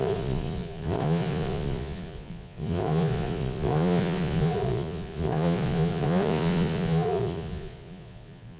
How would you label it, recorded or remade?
remade